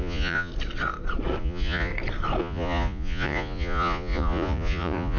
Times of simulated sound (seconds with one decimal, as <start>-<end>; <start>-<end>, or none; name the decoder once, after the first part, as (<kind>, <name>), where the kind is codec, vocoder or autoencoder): 0.0-0.5 (vocoder, Vocos); 1.4-1.9; 2.4-5.2